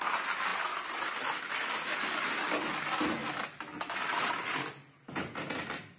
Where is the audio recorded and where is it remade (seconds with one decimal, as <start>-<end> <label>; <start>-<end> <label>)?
0.0-6.0 recorded